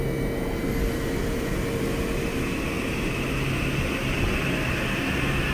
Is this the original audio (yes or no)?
yes